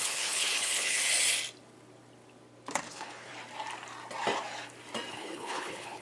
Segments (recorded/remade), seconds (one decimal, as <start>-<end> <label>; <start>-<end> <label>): 0.0-1.0 remade; 1.0-2.9 recorded; 2.9-3.3 remade; 3.3-5.1 recorded; 5.1-6.0 remade